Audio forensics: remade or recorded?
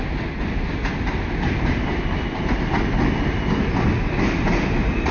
recorded